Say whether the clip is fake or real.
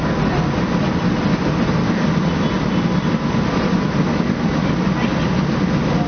real